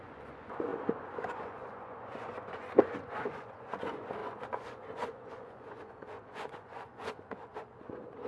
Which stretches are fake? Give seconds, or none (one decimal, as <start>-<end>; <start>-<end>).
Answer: 0.0-8.3